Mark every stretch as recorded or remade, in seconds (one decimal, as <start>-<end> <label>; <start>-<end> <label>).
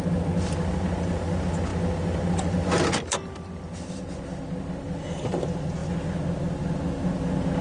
0.0-7.6 recorded